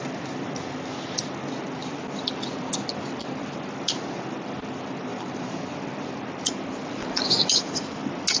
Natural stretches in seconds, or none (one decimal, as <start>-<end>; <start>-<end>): 0.0-5.1; 5.6-7.0; 7.5-8.4